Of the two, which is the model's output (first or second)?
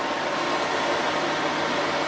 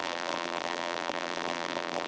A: second